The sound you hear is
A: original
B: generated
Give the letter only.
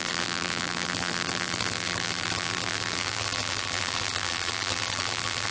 B